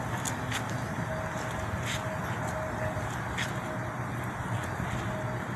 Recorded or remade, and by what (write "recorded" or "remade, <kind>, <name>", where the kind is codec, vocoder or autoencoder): recorded